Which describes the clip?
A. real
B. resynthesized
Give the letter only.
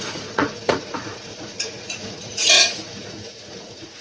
B